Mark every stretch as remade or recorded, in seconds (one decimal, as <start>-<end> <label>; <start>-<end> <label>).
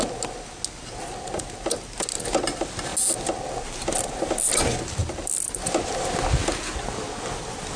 0.0-7.8 recorded